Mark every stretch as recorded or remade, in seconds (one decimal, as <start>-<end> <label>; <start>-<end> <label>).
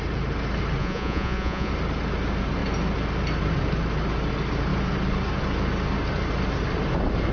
0.0-0.8 recorded; 0.8-1.7 remade; 1.7-7.3 recorded